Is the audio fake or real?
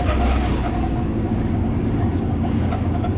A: fake